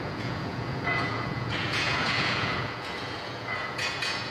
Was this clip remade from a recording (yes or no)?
yes